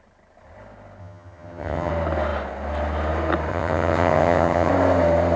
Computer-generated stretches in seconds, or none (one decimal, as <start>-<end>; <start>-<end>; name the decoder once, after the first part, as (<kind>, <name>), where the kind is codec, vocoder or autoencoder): 1.0-1.9 (vocoder, HiFi-GAN); 3.5-4.7